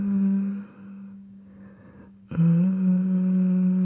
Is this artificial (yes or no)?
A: yes